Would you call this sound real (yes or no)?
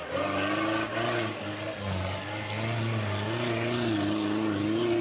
yes